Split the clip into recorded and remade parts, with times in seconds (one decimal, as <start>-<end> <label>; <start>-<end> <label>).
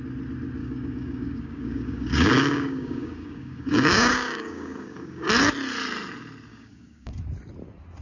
0.0-0.6 recorded; 0.6-5.3 remade; 5.3-6.5 recorded; 6.5-7.1 remade; 7.1-8.0 recorded